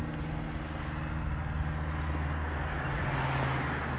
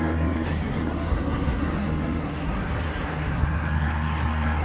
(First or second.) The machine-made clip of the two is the second